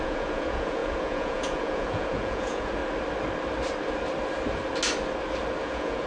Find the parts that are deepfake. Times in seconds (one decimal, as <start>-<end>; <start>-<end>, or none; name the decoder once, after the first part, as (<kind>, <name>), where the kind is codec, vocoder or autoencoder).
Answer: 0.0-2.8 (vocoder, Vocos); 5.6-6.1